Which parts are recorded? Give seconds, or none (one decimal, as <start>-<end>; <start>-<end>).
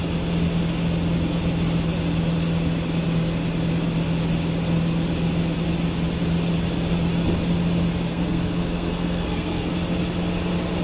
0.0-8.1; 9.7-10.8